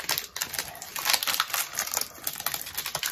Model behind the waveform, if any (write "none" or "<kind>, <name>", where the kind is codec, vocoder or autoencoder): none